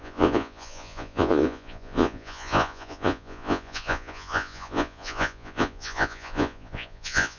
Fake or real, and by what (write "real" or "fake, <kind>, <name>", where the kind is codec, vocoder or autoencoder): fake, vocoder, Vocos